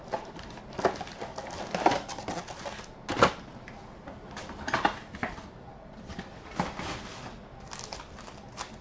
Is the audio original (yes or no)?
yes